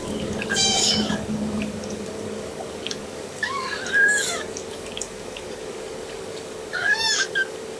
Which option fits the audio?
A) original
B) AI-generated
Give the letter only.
B